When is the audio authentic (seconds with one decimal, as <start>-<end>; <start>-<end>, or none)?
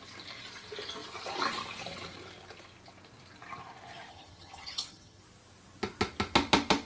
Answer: 0.0-4.1; 5.2-6.9